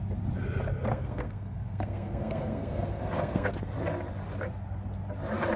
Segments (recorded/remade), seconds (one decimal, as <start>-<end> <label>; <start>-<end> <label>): 0.0-0.9 recorded; 0.9-3.5 remade; 3.5-5.6 recorded